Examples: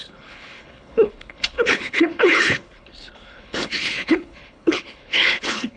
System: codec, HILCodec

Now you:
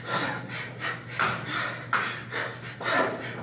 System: none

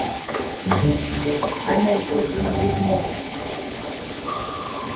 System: codec, HILCodec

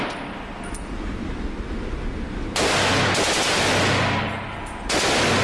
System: none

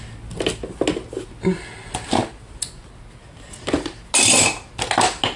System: none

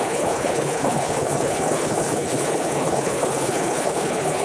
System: codec, HILCodec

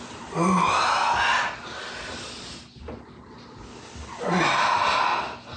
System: none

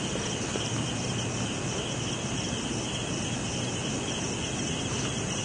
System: none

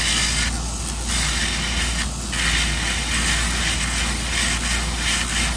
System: none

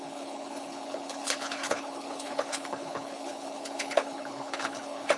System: codec, HILCodec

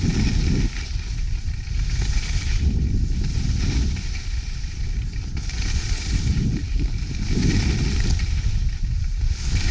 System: none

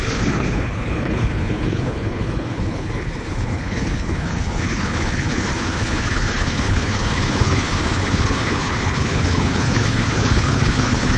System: codec, HILCodec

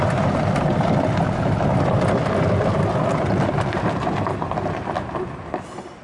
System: none